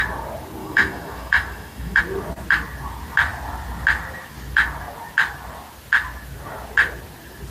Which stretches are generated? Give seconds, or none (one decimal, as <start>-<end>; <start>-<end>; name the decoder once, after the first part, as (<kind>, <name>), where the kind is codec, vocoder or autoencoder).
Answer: 0.6-2.0 (autoencoder, DAC-VAE)